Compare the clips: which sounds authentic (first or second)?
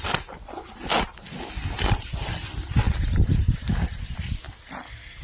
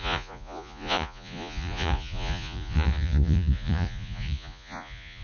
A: first